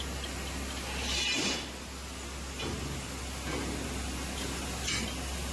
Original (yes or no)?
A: yes